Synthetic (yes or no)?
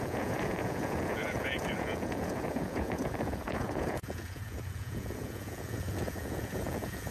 yes